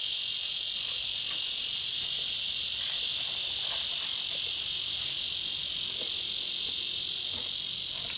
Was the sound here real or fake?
real